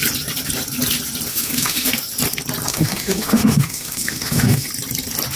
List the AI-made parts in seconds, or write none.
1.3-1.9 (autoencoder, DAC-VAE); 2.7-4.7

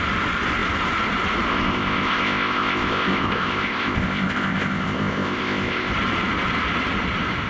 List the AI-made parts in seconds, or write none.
1.5-5.9 (codec, ZipCodec)

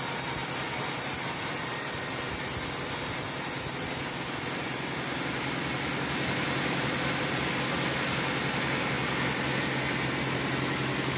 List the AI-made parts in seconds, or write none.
none

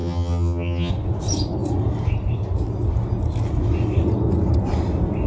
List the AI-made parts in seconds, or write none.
0.0-0.9 (vocoder, HiFi-GAN)

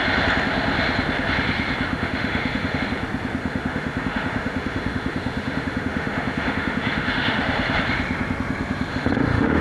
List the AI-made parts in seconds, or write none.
1.9-2.8 (autoencoder, DAC-VAE); 3.4-7.4; 8.9-9.6

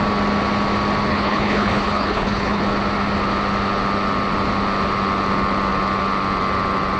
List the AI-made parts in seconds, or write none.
1.1-2.6 (codec, HILCodec)

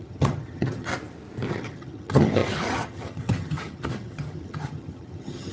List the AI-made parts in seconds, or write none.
0.0-0.9 (vocoder, HiFi-GAN); 1.5-5.5

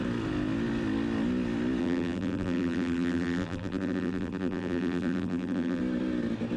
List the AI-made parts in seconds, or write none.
1.8-5.8 (vocoder, BigVGAN v2)